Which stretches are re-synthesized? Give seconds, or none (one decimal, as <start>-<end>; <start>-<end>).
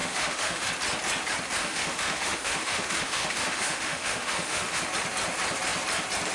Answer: 0.0-0.7; 1.6-4.8